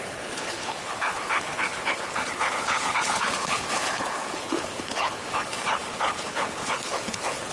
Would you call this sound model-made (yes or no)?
yes